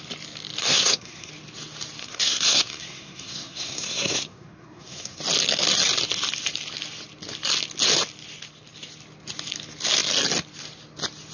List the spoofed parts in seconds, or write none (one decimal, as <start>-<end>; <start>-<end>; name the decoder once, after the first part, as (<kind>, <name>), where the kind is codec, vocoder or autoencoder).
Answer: 0.6-1.3 (codec, SNAC); 2.0-5.2